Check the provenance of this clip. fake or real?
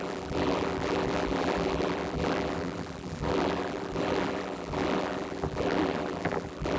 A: fake